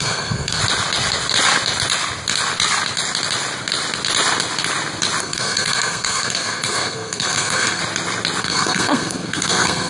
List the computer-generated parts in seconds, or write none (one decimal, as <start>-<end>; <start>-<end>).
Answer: 0.0-0.6; 5.2-7.8; 8.4-9.9